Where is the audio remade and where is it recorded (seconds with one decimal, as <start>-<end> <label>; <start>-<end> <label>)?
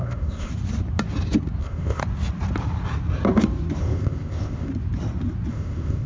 0.0-0.5 remade; 0.5-1.6 recorded; 1.6-2.0 remade; 2.0-3.8 recorded; 3.8-4.7 remade; 4.7-5.5 recorded; 5.5-6.1 remade